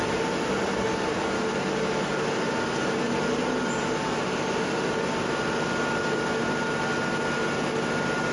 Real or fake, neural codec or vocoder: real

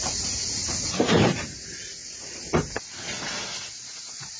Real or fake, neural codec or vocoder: fake, vocoder, BigVGAN v2